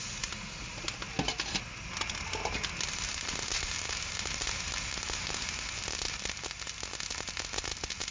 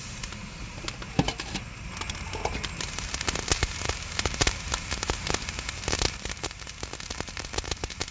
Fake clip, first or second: second